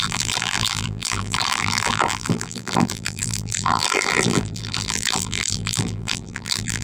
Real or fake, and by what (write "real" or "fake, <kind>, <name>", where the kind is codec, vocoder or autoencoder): fake, vocoder, BigVGAN v2